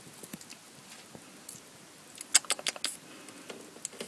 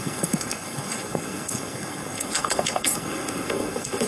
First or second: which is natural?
first